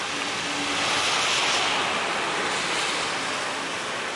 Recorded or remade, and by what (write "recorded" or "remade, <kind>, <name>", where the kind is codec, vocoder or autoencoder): recorded